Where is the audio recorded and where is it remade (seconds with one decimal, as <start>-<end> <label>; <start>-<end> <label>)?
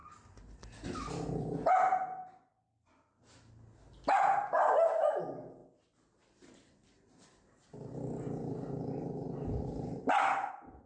0.0-10.9 recorded